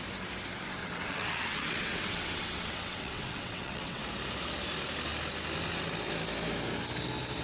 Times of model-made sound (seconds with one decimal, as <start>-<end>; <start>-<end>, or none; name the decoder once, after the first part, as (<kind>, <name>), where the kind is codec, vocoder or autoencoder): 0.8-4.0 (vocoder, WaveNeXt)